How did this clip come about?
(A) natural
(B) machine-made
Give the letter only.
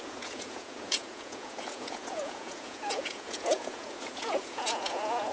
B